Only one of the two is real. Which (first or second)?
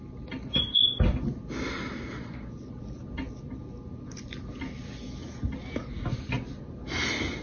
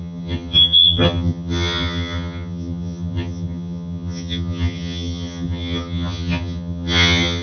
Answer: first